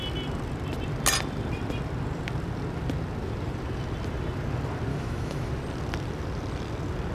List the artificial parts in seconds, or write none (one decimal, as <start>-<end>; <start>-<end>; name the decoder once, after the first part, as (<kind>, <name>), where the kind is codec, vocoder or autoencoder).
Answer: 4.9-5.5 (autoencoder, DAC-VAE)